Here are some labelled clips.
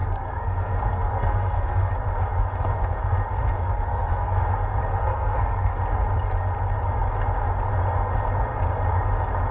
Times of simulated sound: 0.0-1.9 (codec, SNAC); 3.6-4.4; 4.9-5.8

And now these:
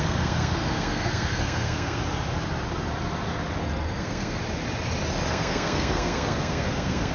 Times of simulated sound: 0.0-2.0 (codec, SNAC); 3.6-4.4; 5.3-7.1

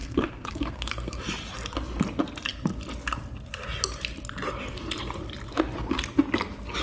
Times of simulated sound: 0.0-1.2 (codec, SNAC)